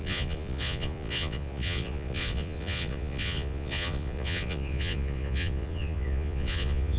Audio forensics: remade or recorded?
remade